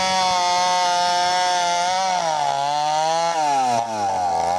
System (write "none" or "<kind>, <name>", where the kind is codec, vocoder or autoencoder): none